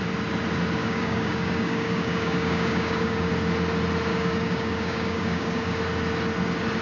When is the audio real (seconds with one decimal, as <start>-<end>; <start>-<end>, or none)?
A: 0.0-0.8; 3.3-4.1; 5.8-6.8